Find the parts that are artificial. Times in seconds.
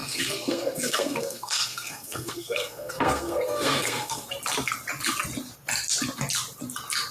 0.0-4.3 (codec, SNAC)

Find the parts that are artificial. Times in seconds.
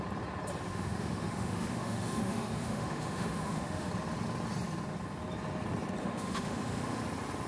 0.7-3.9 (autoencoder, DAC-VAE); 6.0-7.0